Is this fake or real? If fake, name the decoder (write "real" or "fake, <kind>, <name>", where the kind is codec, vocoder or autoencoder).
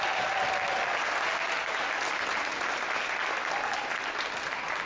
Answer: real